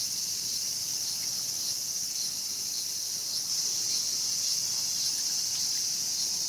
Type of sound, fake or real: real